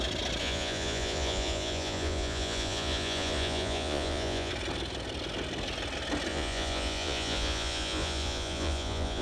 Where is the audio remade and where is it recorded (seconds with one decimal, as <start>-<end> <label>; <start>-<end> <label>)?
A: 0.0-0.4 recorded; 0.4-4.5 remade; 4.5-6.3 recorded; 6.3-9.2 remade